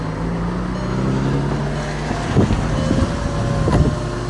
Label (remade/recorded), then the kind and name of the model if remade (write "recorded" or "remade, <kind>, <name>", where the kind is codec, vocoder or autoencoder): recorded